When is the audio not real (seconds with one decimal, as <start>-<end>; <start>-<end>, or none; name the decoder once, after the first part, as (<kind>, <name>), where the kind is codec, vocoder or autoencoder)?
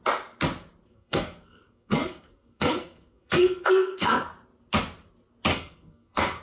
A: 0.9-4.3 (codec, SNAC); 5.5-6.4